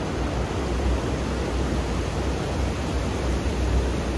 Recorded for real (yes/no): yes